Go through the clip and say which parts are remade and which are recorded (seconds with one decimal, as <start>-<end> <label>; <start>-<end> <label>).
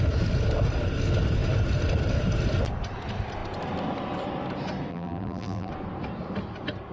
0.0-4.9 recorded; 4.9-5.7 remade; 5.7-6.9 recorded